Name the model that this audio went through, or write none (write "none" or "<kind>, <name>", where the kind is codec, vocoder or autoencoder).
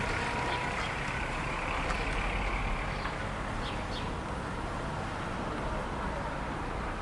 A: none